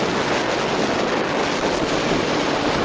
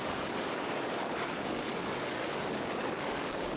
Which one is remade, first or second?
second